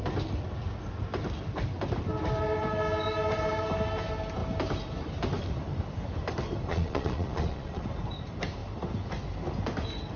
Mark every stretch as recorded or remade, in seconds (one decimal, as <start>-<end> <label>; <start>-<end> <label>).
0.0-6.7 recorded; 6.7-7.8 remade; 7.8-10.2 recorded